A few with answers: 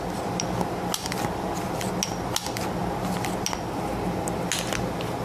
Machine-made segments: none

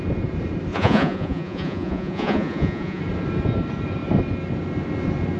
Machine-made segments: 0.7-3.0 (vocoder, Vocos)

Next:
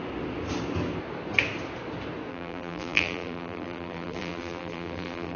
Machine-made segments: 2.3-5.4 (vocoder, BigVGAN v2)

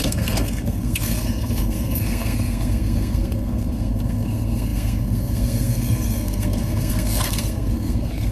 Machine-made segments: 0.0-8.3 (codec, SNAC)

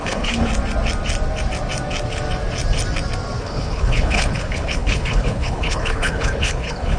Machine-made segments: 0.0-0.5 (codec, HILCodec); 3.4-7.0